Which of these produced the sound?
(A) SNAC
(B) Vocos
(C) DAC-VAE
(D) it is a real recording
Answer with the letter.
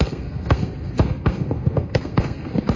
A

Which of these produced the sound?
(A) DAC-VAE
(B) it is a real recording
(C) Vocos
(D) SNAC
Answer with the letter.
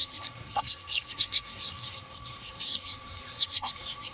D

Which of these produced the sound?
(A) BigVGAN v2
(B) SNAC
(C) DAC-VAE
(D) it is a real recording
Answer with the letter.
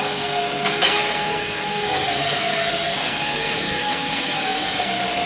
B